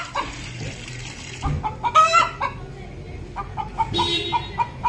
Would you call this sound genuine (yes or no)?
yes